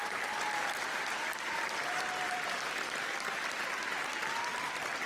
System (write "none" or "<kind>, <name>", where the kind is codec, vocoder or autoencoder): vocoder, BigVGAN v2